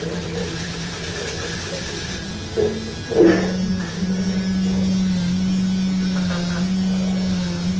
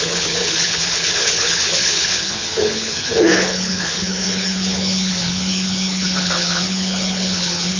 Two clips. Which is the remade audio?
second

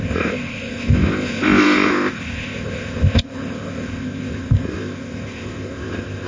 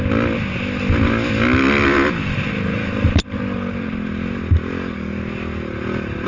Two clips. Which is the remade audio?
first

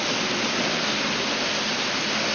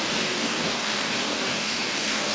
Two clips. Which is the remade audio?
second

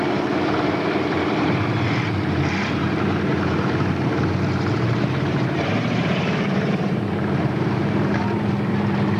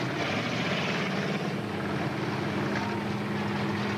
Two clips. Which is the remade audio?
first